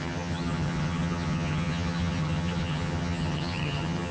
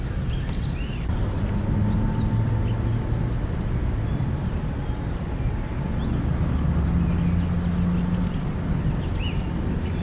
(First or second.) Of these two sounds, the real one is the second